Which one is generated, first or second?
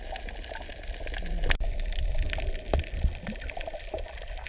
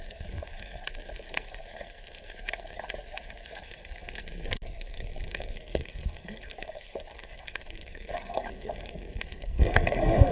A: second